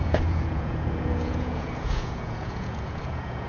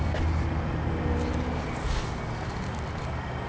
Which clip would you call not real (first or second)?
first